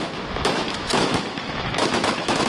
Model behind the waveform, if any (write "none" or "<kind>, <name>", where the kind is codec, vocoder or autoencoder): autoencoder, DAC-VAE